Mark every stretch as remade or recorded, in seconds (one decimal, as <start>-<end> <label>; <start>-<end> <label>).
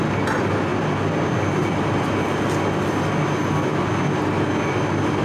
0.0-5.2 recorded